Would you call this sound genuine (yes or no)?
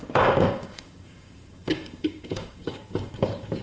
no